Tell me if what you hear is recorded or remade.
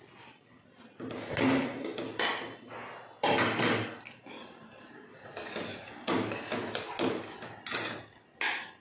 recorded